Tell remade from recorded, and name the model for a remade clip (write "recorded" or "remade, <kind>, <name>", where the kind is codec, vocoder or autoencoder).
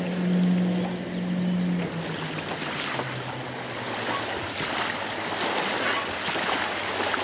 recorded